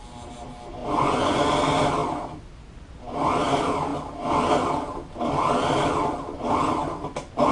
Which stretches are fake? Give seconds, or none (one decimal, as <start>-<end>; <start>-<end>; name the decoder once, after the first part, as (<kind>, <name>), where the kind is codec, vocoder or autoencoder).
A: 0.8-1.4 (vocoder, Vocos)